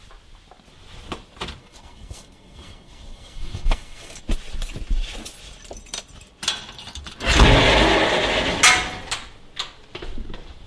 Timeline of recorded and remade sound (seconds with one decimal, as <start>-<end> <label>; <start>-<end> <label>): 0.0-1.6 recorded; 1.6-4.2 remade; 4.2-10.7 recorded